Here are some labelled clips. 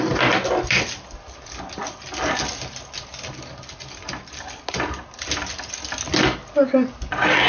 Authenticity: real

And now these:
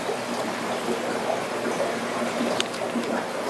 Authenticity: real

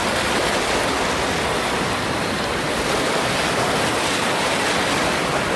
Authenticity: real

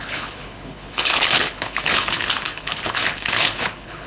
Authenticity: fake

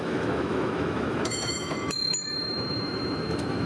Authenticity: fake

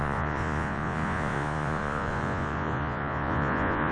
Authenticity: fake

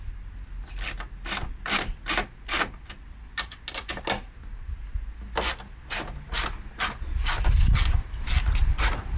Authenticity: real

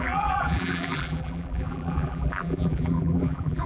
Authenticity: fake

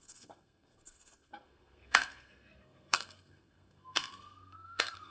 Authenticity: fake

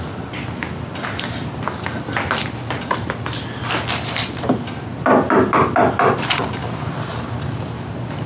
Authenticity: real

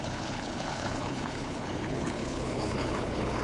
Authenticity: fake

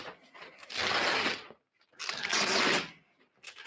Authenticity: real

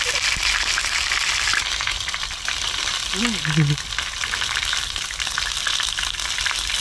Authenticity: real